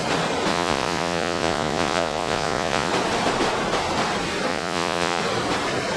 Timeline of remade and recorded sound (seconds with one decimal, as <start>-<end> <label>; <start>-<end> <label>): 0.0-0.5 recorded; 0.5-2.9 remade; 2.9-4.5 recorded; 4.5-5.2 remade; 5.2-6.0 recorded